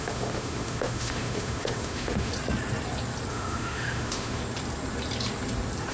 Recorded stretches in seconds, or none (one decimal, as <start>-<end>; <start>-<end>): 2.3-3.3; 4.4-5.9